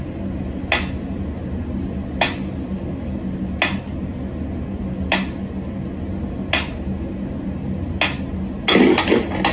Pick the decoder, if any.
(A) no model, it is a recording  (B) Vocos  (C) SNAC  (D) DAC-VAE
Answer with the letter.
A